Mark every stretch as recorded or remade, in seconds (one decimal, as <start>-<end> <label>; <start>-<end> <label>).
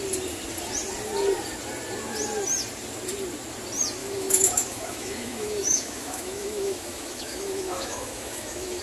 0.0-4.0 recorded; 4.0-8.8 remade